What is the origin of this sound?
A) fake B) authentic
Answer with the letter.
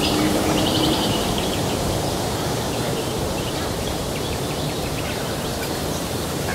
A